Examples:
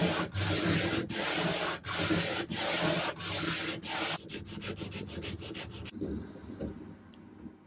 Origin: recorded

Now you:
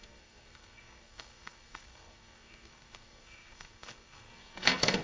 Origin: remade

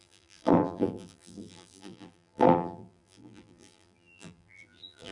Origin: remade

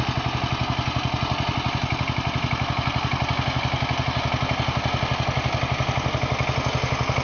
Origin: recorded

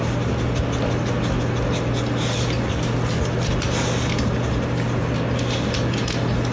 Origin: recorded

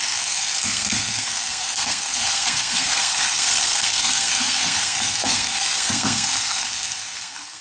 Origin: remade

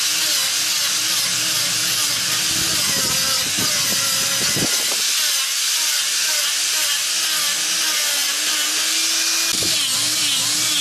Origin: recorded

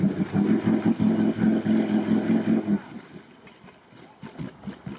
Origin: recorded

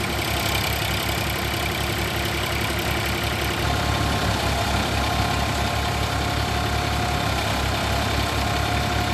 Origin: recorded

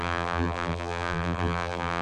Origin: remade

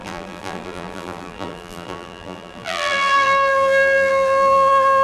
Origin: remade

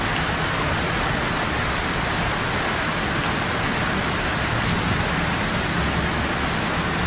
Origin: recorded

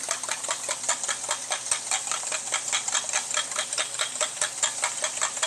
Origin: recorded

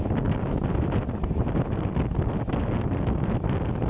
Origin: recorded